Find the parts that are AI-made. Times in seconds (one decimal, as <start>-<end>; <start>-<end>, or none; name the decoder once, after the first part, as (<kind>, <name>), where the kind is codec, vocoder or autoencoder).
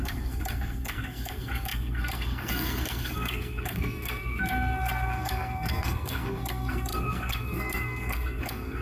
0.0-8.8 (codec, SNAC)